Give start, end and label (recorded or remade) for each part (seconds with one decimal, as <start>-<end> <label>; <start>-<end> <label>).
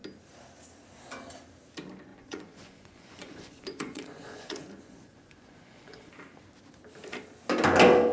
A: 0.0-2.1 recorded; 2.1-6.1 remade; 6.1-8.1 recorded